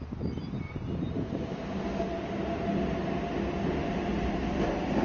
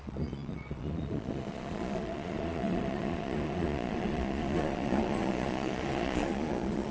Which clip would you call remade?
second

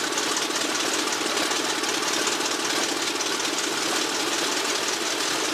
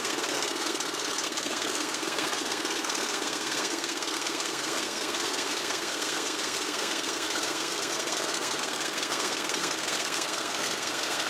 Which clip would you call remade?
second